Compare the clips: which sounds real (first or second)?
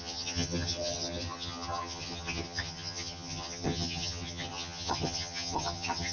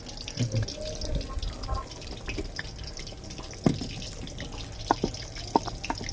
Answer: second